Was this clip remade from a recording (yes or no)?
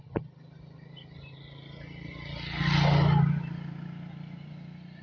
no